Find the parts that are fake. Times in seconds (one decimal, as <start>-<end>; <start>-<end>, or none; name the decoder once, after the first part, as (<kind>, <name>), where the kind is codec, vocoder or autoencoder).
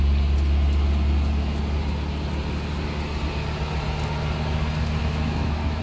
5.0-5.8 (autoencoder, DAC-VAE)